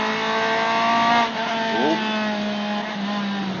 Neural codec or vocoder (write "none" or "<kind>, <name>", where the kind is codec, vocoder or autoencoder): none